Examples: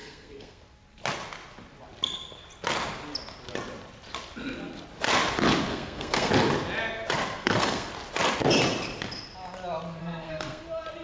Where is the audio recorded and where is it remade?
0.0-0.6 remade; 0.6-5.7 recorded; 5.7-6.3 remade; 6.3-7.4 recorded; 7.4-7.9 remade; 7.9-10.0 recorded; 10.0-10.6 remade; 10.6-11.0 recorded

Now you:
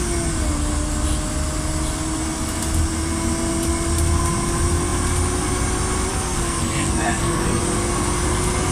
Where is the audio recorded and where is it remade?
0.0-6.1 recorded; 6.1-7.6 remade; 7.6-8.7 recorded

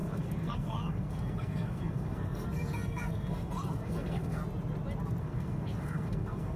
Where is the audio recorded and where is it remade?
0.0-4.4 remade; 4.4-5.2 recorded; 5.2-6.6 remade

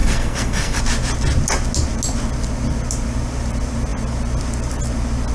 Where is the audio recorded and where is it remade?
0.0-0.8 remade; 0.8-5.3 recorded

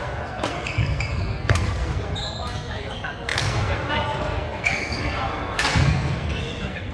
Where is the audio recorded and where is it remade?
0.0-6.9 remade

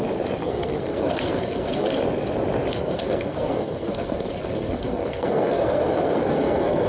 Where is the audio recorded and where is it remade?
0.0-0.4 recorded; 0.4-2.0 remade; 2.0-2.7 recorded; 2.7-6.9 remade